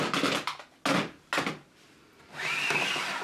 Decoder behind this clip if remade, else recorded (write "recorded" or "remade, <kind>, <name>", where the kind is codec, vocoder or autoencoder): recorded